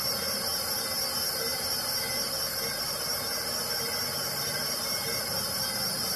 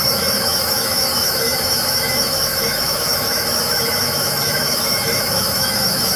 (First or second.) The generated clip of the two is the second